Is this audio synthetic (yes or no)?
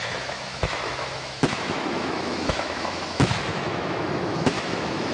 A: yes